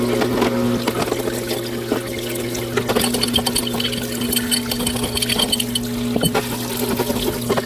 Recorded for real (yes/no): yes